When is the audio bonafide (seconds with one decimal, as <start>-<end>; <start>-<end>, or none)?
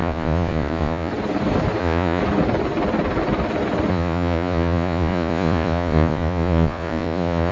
1.1-1.8; 2.2-3.9